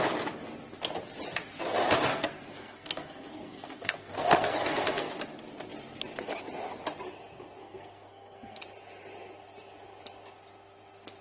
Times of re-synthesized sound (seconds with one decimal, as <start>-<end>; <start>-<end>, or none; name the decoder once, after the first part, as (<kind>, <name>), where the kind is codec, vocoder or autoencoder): 2.1-5.1 (codec, SNAC); 7.6-8.6